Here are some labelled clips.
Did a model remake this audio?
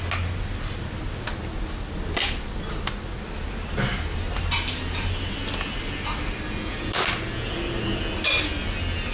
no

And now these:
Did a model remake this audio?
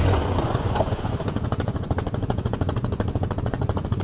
yes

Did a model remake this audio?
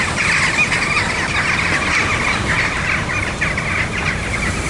no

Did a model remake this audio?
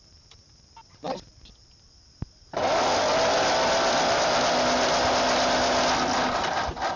no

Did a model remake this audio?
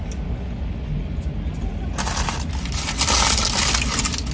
no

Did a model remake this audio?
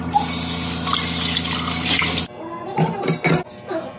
no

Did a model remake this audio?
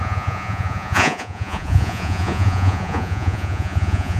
yes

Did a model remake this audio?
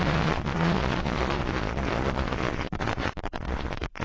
yes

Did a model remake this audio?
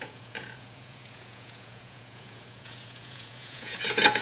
yes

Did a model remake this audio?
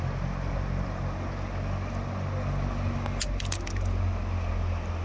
no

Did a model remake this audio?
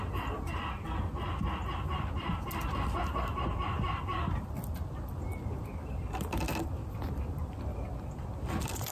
no